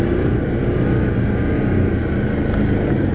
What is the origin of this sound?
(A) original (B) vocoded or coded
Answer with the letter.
A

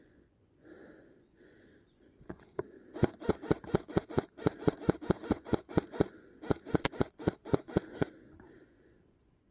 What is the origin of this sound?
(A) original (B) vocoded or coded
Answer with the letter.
B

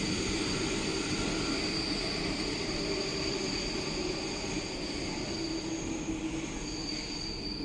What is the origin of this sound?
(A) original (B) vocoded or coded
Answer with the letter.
A